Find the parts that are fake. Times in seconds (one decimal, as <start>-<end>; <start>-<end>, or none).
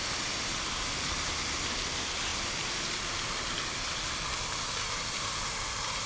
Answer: none